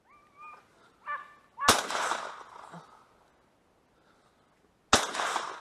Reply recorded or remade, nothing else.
recorded